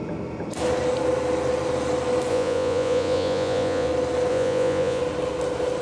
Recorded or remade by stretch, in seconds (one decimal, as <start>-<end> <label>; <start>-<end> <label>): 0.0-2.3 recorded; 2.3-3.9 remade; 3.9-4.3 recorded; 4.3-5.0 remade; 5.0-5.8 recorded